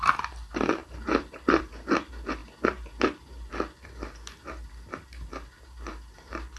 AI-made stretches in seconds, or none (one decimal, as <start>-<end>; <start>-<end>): 0.8-1.6